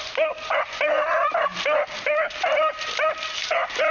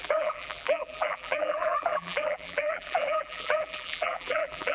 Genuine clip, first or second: first